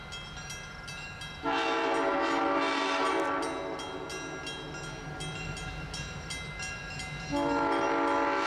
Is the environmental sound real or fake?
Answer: real